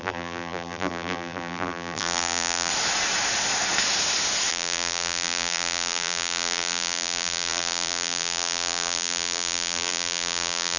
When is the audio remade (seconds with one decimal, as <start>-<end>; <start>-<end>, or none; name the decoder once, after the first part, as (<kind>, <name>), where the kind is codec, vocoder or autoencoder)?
0.0-2.7 (vocoder, BigVGAN v2); 4.5-10.8